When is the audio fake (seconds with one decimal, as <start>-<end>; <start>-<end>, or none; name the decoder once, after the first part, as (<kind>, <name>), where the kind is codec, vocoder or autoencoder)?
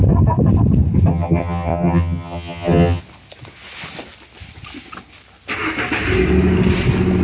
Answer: 1.1-3.0 (vocoder, HiFi-GAN)